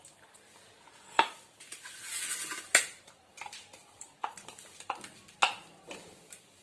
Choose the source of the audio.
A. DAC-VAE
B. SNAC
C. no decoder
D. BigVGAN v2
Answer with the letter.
D